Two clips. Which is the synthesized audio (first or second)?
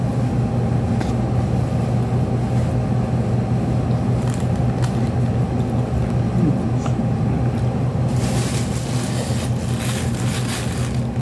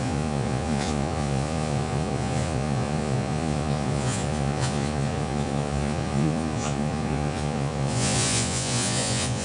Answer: second